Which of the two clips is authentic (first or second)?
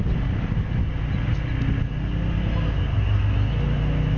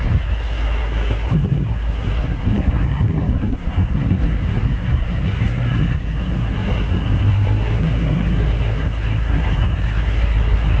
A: first